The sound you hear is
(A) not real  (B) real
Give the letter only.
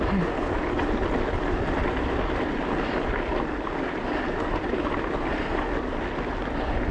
B